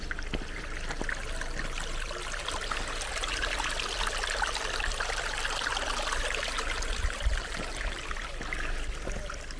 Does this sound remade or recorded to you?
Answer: recorded